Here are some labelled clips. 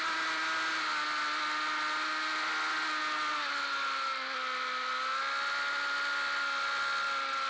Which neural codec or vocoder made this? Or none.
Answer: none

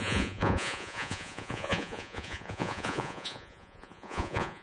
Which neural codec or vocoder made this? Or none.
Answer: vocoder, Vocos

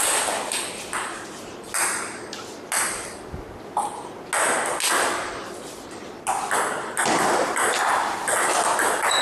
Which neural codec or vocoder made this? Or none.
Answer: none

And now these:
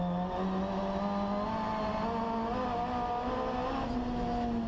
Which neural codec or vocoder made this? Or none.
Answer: none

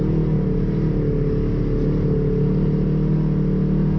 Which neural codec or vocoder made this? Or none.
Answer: none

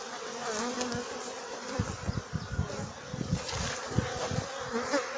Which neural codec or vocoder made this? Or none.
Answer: none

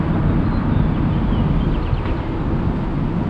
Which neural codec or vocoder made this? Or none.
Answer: none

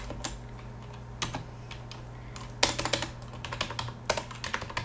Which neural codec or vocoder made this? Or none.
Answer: none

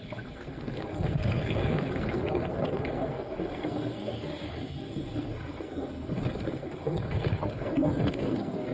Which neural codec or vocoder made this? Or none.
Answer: codec, SNAC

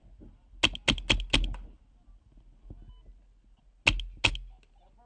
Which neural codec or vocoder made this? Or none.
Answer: none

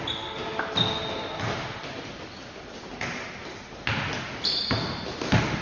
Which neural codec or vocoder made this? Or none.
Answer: none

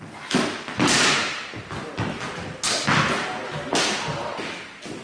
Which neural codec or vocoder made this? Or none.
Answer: none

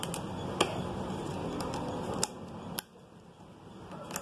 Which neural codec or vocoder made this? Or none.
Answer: none